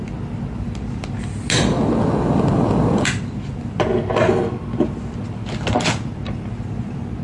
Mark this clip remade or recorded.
recorded